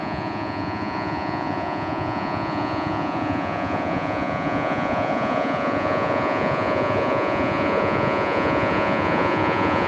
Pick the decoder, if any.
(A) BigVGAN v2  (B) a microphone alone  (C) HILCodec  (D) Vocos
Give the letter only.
D